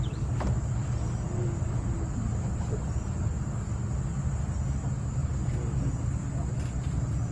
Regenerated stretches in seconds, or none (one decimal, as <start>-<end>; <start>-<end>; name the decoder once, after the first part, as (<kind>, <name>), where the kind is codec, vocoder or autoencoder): none